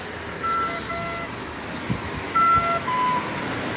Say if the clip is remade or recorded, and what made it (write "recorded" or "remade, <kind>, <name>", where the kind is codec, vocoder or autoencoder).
recorded